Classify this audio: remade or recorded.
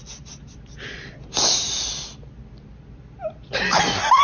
recorded